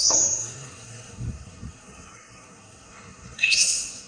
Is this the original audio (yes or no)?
no